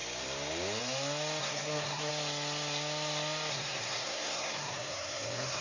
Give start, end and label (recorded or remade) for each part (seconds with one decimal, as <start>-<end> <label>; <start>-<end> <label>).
0.0-1.4 recorded; 1.4-2.1 remade; 2.1-3.5 recorded; 3.5-5.6 remade